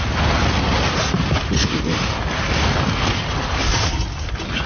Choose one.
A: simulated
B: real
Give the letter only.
B